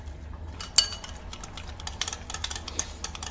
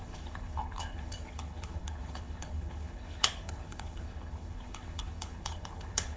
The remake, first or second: second